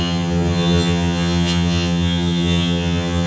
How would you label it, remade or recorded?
remade